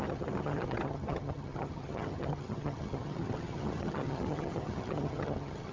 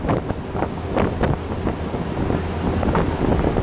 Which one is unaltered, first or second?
second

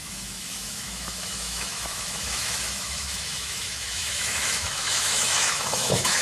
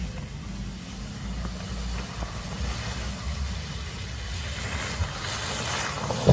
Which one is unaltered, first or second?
second